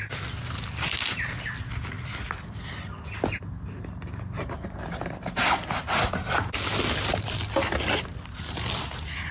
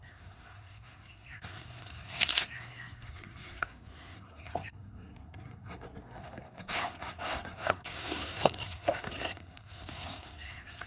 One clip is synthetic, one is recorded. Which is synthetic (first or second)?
second